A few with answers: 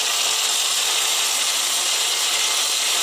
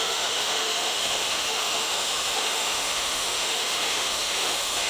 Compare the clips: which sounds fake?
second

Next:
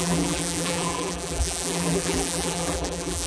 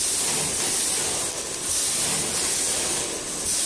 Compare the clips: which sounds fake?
first